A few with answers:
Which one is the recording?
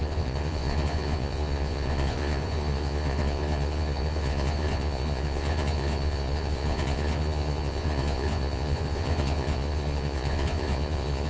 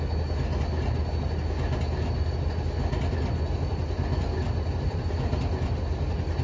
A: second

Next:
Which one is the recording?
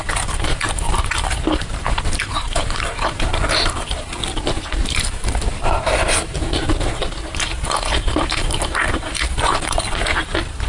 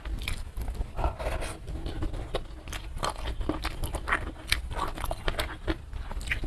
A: second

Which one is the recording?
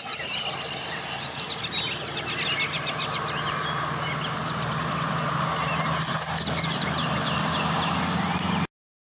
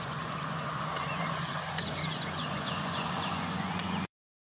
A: first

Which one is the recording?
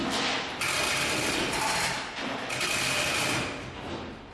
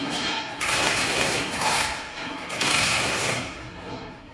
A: first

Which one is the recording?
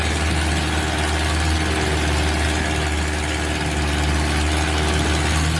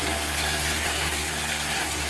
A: first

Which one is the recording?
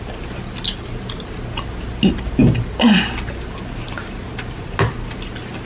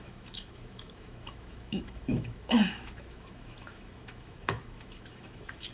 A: first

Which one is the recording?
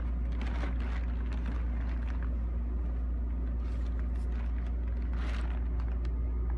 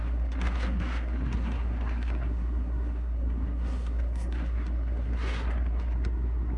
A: first